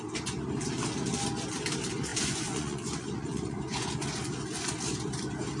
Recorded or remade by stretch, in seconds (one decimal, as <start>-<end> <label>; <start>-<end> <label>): 0.0-2.1 recorded; 2.1-4.3 remade; 4.3-5.6 recorded